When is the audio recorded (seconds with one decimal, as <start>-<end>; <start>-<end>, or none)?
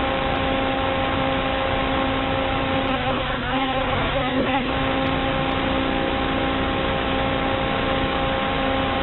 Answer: 0.0-2.9; 4.7-9.0